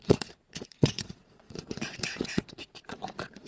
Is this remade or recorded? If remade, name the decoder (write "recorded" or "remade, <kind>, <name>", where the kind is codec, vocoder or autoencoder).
remade, vocoder, Vocos